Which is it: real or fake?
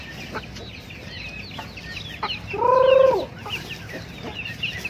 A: real